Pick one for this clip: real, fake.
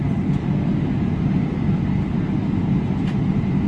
real